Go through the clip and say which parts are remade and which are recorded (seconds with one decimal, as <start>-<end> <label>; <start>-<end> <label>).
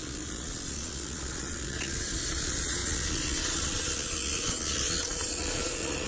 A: 0.0-6.1 remade